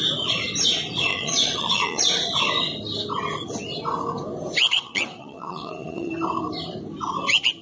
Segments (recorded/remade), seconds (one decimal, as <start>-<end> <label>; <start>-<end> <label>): 0.0-1.1 recorded; 1.1-2.0 remade; 2.0-4.7 recorded; 4.7-6.1 remade; 6.1-7.6 recorded